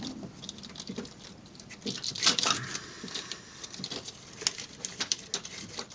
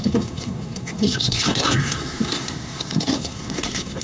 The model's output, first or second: second